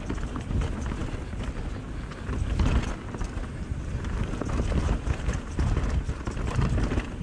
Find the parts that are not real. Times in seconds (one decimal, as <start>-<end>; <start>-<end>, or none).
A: none